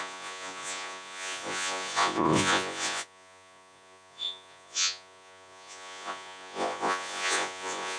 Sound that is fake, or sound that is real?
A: fake